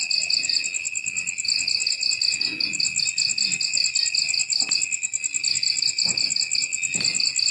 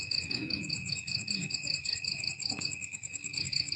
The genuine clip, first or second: first